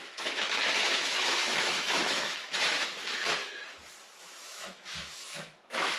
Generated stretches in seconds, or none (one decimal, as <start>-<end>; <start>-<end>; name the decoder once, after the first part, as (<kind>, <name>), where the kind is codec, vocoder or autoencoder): 0.0-3.3 (autoencoder, DAC-VAE); 4.2-6.0